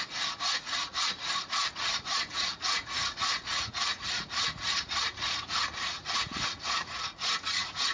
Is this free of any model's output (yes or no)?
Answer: no